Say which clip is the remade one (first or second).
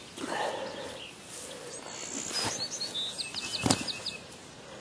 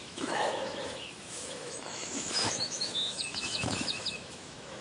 second